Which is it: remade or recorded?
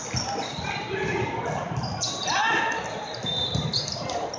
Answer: recorded